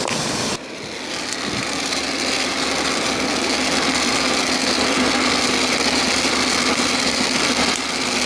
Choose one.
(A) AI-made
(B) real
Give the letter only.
B